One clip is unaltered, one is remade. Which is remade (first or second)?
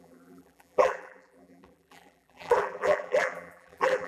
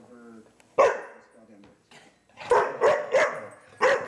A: first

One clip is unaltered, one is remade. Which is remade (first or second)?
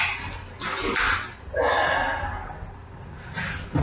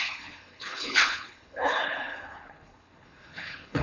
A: second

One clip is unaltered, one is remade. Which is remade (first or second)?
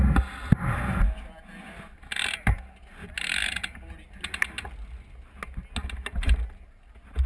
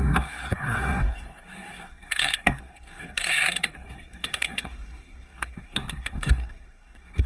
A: second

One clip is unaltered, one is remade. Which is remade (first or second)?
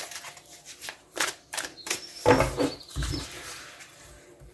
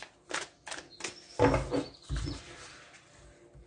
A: first